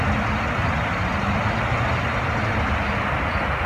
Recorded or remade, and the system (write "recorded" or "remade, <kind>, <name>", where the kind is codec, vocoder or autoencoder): recorded